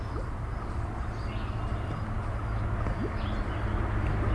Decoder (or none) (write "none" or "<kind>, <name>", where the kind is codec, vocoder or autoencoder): none